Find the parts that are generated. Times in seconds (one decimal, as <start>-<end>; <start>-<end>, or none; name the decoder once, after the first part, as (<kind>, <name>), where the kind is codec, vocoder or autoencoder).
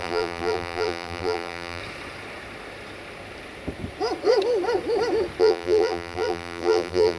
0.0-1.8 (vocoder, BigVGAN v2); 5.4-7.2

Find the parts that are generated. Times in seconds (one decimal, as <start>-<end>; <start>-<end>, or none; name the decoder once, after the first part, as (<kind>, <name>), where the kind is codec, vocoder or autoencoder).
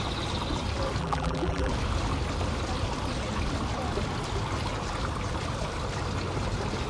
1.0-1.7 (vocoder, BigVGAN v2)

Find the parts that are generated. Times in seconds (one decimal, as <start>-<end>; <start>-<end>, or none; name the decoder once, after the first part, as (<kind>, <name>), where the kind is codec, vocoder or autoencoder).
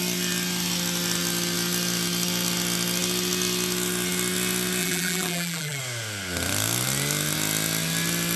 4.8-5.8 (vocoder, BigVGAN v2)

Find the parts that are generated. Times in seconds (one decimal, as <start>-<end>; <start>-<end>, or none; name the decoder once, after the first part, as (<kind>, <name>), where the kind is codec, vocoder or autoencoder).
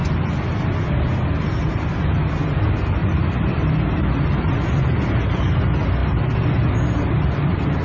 3.0-3.7 (vocoder, BigVGAN v2)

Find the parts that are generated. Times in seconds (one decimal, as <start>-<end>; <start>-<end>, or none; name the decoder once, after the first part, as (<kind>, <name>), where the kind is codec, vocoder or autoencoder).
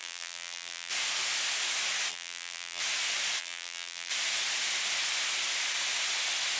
0.0-0.9 (vocoder, BigVGAN v2); 2.1-2.8; 3.4-4.1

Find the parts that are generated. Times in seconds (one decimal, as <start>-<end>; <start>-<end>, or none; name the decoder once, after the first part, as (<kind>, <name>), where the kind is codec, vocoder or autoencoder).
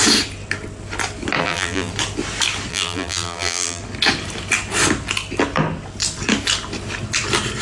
1.4-1.9 (vocoder, BigVGAN v2); 2.7-3.8